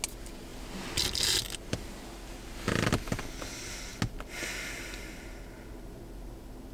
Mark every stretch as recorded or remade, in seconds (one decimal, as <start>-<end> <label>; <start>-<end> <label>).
0.0-0.5 recorded; 0.5-3.4 remade; 3.4-6.7 recorded